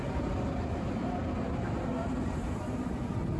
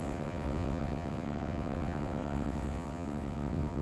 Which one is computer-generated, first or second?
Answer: second